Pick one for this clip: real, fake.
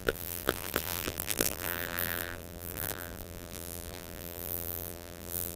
fake